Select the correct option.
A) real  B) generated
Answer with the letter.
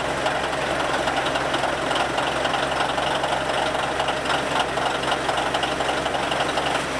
A